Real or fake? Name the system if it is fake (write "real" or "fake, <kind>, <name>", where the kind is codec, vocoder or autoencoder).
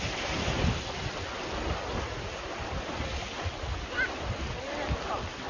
real